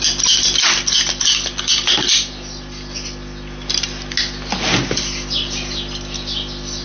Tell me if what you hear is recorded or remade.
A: recorded